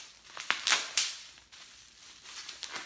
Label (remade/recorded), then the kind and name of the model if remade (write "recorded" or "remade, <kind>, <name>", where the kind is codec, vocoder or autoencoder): recorded